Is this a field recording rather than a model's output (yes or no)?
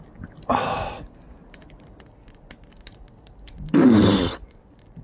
yes